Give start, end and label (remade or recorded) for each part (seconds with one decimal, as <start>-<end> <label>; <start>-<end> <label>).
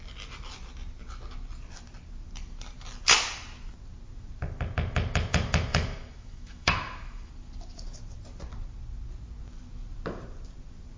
0.0-5.7 recorded; 5.7-7.3 remade; 7.3-11.0 recorded